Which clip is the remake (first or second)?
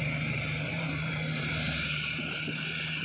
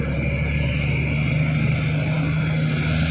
first